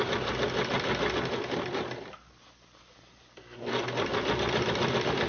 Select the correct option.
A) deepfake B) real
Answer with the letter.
B